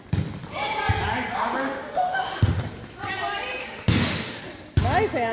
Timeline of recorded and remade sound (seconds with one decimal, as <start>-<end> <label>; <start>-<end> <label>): 0.0-1.6 recorded; 1.6-2.6 remade; 2.6-3.6 recorded; 3.6-4.4 remade; 4.4-5.3 recorded